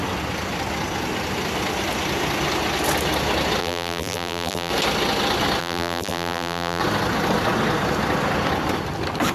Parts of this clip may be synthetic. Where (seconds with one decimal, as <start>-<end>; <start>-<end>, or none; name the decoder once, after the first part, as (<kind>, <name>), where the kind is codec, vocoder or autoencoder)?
3.6-4.7 (vocoder, BigVGAN v2); 5.6-6.8